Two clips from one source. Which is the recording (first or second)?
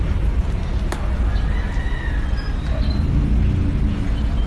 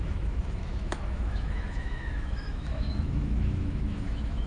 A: first